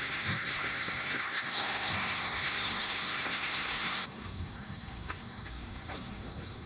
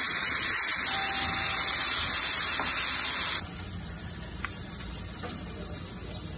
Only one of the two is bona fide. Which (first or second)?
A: second